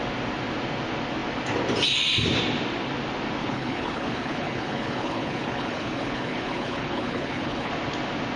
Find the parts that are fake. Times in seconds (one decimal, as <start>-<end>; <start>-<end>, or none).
3.4-7.7